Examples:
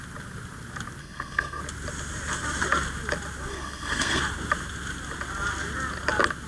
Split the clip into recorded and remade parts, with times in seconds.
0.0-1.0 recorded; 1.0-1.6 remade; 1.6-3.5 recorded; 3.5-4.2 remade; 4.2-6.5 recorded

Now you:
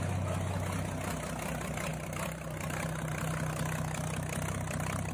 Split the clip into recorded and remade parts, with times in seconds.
0.0-5.1 recorded

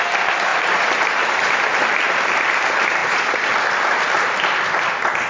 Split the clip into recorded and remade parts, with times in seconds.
0.0-0.5 recorded; 0.5-1.5 remade; 1.5-3.0 recorded; 3.0-3.5 remade; 3.5-5.3 recorded

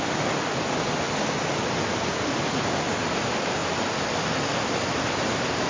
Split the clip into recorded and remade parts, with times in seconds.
0.0-5.7 recorded